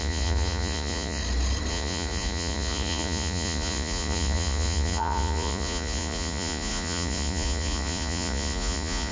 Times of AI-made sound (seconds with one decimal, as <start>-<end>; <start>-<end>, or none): 0.0-1.2; 1.7-9.1